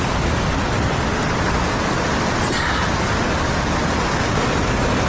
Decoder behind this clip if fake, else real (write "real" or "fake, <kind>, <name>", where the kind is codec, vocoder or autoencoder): real